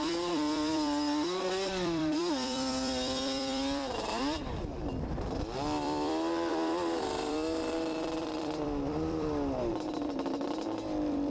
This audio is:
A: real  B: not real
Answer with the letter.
B